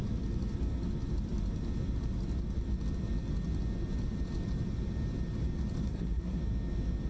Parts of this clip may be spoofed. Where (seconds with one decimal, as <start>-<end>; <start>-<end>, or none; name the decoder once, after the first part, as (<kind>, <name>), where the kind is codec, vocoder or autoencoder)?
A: 5.8-6.4 (codec, SNAC)